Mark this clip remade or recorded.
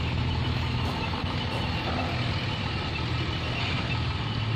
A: recorded